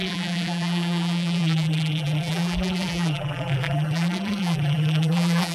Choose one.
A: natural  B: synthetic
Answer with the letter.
B